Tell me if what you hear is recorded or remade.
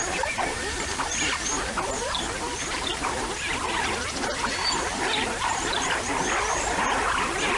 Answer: remade